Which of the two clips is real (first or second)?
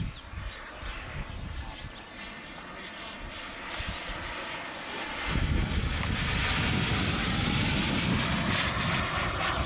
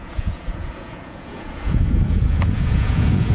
first